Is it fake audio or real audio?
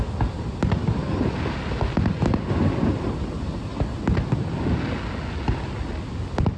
real